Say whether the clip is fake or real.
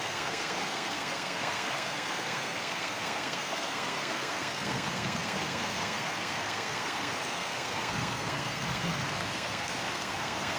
fake